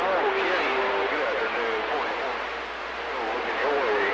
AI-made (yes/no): yes